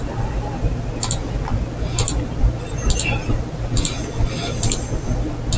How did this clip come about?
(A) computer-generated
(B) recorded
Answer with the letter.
B